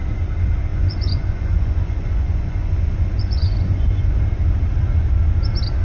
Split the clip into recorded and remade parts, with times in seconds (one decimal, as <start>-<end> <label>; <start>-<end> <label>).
0.0-0.7 recorded; 0.7-4.2 remade; 4.2-5.8 recorded